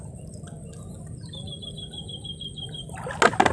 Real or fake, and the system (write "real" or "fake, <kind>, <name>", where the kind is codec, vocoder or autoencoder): real